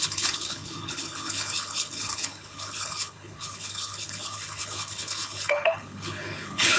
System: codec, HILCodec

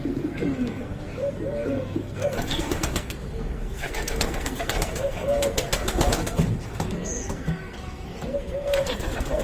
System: codec, SNAC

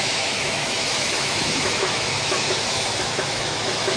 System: autoencoder, DAC-VAE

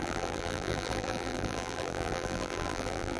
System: vocoder, BigVGAN v2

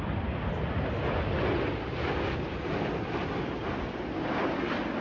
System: none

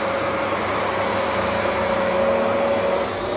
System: none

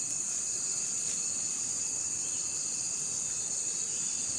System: none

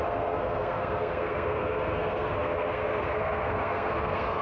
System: codec, SNAC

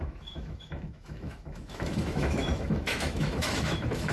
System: autoencoder, DAC-VAE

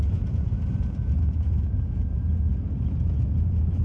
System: vocoder, Vocos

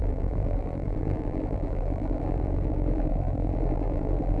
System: vocoder, BigVGAN v2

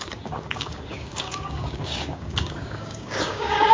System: codec, DAC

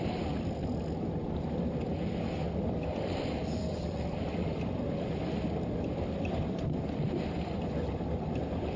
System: none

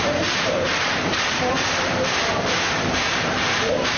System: vocoder, BigVGAN v2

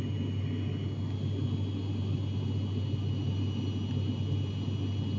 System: none